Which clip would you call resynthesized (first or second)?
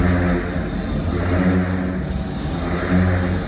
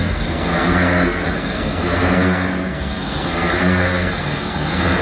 second